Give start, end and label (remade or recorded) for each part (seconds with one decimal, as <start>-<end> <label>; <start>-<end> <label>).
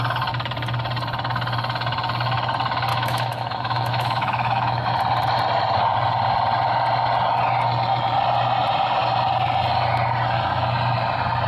0.0-2.9 recorded; 2.9-4.9 remade; 4.9-11.5 recorded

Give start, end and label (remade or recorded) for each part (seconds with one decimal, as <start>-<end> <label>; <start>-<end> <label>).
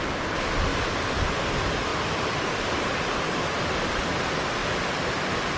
0.0-5.6 recorded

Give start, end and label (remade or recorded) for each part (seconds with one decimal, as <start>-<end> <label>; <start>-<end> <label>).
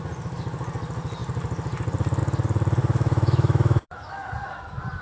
0.0-2.8 recorded; 2.8-4.3 remade; 4.3-5.0 recorded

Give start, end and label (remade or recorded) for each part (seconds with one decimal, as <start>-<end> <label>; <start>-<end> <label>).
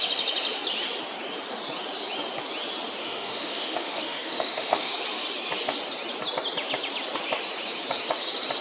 0.0-3.0 recorded; 3.0-4.9 remade; 4.9-8.6 recorded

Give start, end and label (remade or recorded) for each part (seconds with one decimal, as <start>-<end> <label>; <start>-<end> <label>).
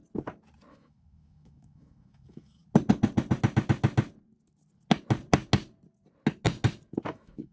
0.0-0.7 recorded; 0.7-2.6 remade; 2.6-7.1 recorded; 7.1-7.5 remade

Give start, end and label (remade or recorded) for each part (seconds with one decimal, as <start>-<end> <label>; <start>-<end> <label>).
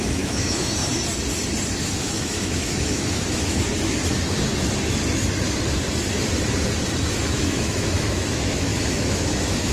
0.0-0.8 remade; 0.8-2.0 recorded; 2.0-4.0 remade; 4.0-7.1 recorded; 7.1-9.7 remade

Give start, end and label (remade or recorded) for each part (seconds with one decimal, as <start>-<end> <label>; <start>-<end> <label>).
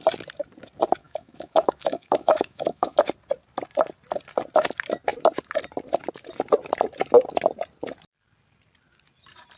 0.0-1.0 recorded; 1.0-3.0 remade; 3.0-9.6 recorded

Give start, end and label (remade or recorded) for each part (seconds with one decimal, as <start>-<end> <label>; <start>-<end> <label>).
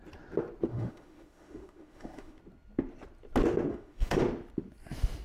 0.0-0.7 recorded; 0.7-2.4 remade; 2.4-3.7 recorded; 3.7-4.2 remade; 4.2-5.2 recorded